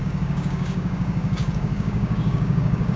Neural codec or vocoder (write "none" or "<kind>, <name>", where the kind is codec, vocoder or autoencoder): codec, DAC